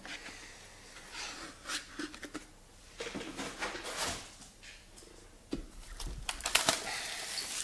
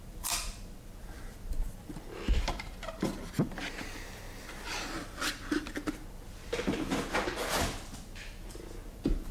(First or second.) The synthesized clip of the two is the second